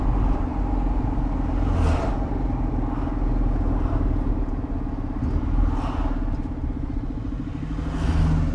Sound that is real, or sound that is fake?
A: real